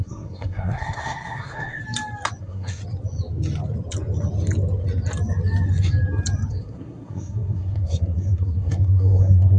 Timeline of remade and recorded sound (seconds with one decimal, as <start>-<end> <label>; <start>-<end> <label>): 0.0-1.8 remade; 1.8-2.4 recorded; 2.4-2.8 remade; 2.8-6.5 recorded; 6.5-9.6 remade